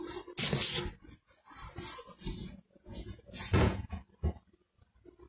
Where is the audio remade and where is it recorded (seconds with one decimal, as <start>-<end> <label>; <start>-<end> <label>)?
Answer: 0.0-2.4 recorded; 2.4-4.0 remade; 4.0-5.3 recorded